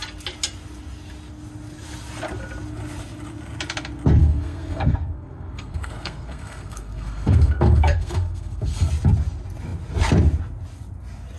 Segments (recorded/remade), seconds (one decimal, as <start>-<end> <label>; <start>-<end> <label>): 0.0-4.2 recorded; 4.2-8.9 remade; 8.9-11.4 recorded